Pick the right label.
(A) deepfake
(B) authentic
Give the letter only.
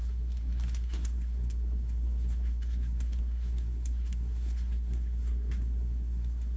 A